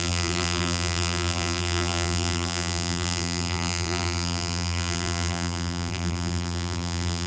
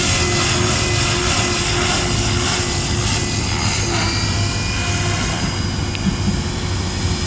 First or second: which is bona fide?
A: second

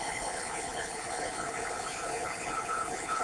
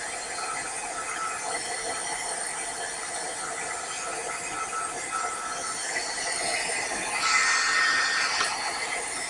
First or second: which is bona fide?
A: second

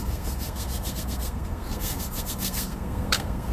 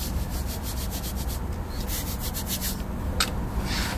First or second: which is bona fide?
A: second